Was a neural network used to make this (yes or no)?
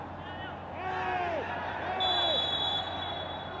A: no